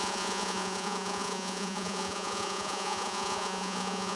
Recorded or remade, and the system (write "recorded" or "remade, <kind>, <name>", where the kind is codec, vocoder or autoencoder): remade, vocoder, Vocos